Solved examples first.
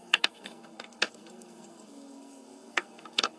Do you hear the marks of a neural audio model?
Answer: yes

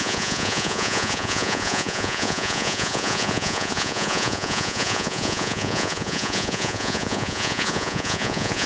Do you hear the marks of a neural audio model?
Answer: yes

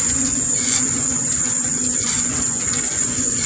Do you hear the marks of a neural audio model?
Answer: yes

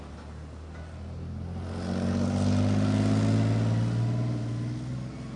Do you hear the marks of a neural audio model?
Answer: no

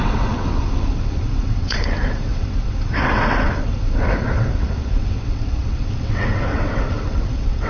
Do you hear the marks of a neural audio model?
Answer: yes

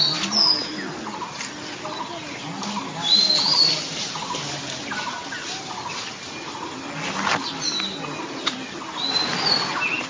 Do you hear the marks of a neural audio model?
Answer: no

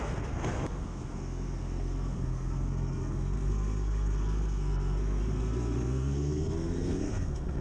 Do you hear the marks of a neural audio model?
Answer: yes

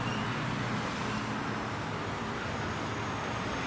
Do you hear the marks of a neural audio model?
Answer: no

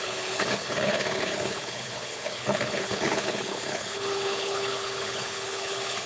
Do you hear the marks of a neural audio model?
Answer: yes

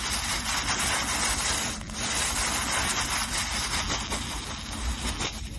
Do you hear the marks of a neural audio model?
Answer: no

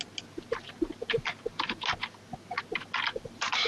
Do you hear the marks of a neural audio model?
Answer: no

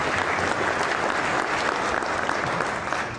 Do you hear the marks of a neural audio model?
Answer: no